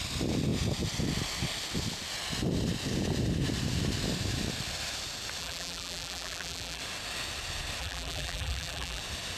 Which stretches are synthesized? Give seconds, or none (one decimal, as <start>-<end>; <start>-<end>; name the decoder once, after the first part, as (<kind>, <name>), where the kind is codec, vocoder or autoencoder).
5.4-6.8 (vocoder, BigVGAN v2); 7.8-9.0